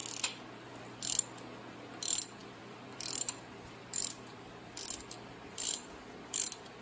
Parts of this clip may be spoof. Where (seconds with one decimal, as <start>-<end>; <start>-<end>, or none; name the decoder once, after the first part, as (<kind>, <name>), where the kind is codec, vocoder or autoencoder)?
2.4-4.7 (vocoder, BigVGAN v2)